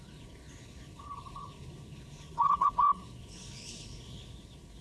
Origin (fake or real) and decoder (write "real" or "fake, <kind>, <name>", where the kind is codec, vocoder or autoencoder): fake, codec, HILCodec